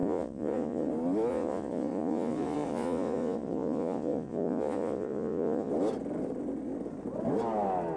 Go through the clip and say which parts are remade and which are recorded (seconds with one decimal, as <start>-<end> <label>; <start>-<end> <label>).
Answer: 0.0-0.9 remade; 0.9-1.3 recorded; 1.3-5.7 remade; 5.7-8.0 recorded